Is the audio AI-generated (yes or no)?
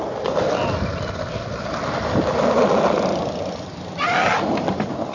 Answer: yes